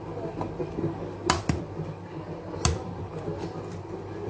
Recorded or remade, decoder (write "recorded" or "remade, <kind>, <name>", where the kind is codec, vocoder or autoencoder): recorded